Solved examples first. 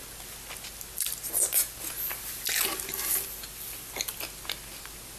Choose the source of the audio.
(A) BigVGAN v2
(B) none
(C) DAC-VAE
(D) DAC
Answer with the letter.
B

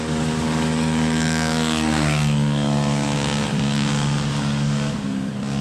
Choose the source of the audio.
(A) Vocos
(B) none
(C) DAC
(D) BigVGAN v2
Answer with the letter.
C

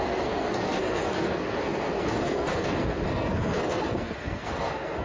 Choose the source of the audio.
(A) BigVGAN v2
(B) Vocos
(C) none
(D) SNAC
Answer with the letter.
D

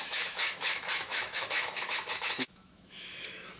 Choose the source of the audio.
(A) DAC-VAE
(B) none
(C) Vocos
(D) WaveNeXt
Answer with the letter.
A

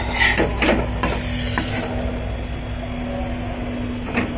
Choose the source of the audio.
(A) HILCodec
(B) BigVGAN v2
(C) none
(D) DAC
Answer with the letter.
C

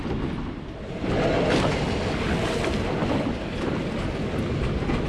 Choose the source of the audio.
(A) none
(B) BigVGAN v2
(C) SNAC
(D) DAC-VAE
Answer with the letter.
A